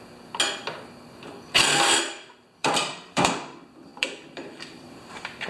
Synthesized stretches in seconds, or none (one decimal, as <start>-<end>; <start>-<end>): 2.6-3.3; 3.9-5.1